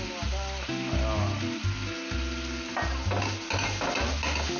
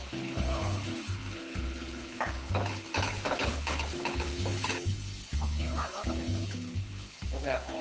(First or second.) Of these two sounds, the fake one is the second